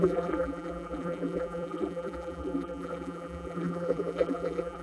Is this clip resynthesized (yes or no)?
yes